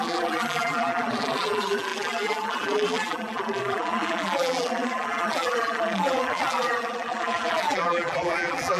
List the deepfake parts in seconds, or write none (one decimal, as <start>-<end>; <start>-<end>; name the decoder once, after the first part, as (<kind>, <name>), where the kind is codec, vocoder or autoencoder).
0.0-8.8 (vocoder, BigVGAN v2)